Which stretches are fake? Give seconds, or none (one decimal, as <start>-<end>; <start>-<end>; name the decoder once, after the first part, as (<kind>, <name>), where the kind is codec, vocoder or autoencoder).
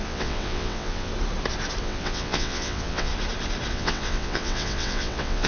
0.0-1.1 (vocoder, WaveNeXt); 1.8-3.1; 3.7-5.5